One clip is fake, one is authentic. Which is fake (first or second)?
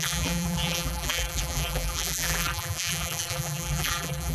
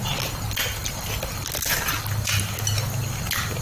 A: first